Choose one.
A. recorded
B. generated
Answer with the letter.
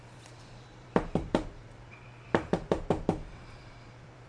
B